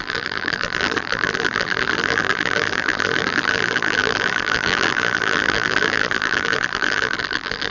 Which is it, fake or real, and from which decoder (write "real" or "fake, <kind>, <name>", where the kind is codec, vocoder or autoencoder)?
fake, vocoder, BigVGAN v2